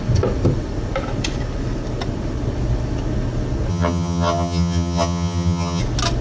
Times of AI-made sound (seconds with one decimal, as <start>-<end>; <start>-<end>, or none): 3.7-5.8